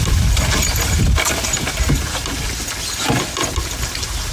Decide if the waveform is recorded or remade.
recorded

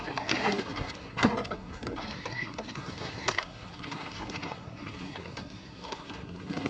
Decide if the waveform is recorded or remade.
remade